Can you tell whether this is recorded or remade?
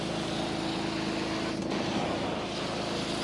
recorded